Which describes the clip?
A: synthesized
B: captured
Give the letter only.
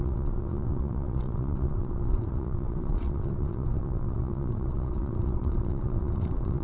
A